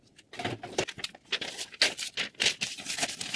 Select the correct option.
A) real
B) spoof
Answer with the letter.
A